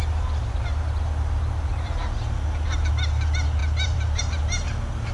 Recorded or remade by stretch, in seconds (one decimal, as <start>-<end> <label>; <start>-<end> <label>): 0.0-3.6 recorded; 3.6-4.2 remade; 4.2-5.1 recorded